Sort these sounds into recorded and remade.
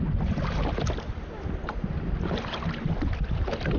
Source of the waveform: recorded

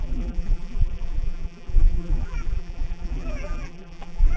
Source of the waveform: remade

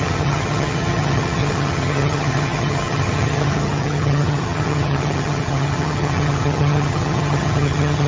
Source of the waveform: remade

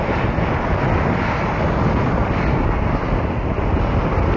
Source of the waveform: recorded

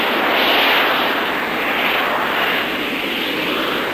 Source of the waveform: recorded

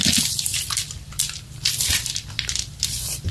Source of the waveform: remade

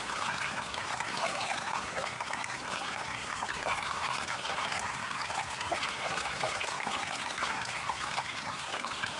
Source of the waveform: remade